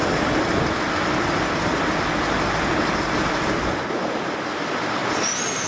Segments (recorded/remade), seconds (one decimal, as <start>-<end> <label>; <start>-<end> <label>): 0.0-5.7 recorded